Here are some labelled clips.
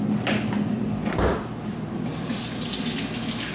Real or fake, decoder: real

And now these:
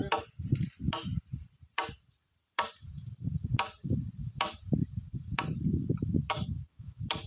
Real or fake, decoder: fake, vocoder, BigVGAN v2